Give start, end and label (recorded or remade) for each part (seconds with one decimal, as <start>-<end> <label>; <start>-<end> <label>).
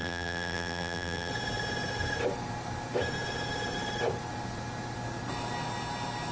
0.0-1.3 remade; 1.3-6.3 recorded